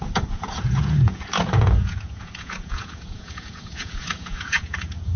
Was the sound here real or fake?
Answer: fake